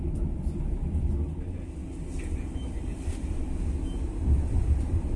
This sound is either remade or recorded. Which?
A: recorded